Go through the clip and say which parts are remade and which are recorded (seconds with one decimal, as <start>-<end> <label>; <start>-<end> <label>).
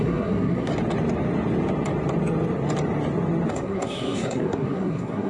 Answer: 0.0-0.7 remade; 0.7-3.5 recorded; 3.5-5.3 remade